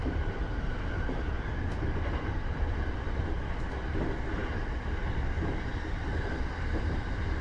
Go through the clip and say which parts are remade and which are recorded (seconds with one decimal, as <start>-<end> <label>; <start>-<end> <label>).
0.0-7.4 recorded